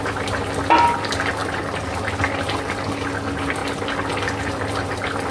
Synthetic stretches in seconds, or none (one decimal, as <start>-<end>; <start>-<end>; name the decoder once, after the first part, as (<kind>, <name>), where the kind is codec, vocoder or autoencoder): none